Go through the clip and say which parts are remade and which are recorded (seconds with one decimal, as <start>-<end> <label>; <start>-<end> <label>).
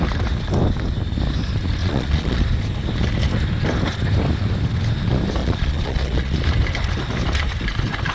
0.0-1.8 recorded; 1.8-2.4 remade; 2.4-5.4 recorded; 5.4-6.4 remade; 6.4-8.1 recorded